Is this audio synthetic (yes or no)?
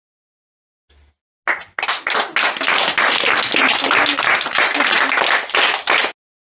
no